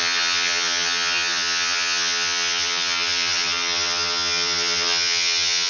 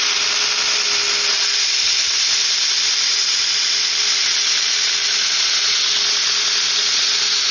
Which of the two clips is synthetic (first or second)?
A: first